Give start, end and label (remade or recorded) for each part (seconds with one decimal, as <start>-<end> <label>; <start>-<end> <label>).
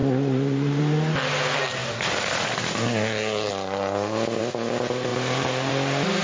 0.0-0.8 remade; 0.8-6.2 recorded